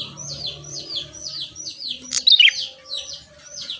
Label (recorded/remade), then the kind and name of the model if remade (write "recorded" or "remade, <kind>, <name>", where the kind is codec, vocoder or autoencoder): recorded